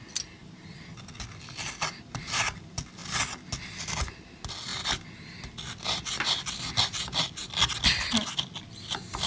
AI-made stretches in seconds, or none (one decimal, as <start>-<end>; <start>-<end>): none

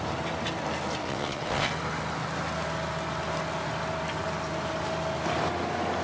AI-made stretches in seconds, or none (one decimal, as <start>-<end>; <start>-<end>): 1.0-1.7

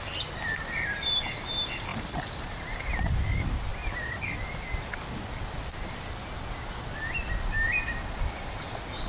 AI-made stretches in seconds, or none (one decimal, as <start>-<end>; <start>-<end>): 1.9-2.8

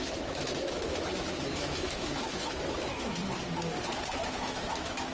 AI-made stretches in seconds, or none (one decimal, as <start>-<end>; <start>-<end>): 0.0-3.2; 4.3-5.1

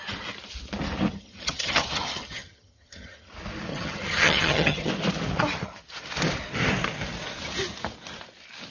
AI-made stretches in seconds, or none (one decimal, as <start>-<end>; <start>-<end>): 1.1-3.3; 3.7-4.9

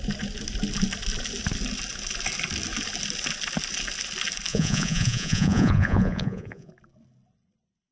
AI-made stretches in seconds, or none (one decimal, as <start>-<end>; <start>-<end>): 4.5-6.7

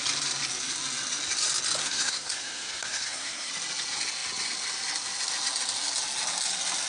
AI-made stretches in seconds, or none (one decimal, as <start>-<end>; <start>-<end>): 1.8-3.5

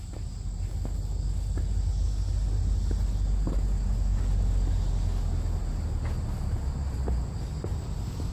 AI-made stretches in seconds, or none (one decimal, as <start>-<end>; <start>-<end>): none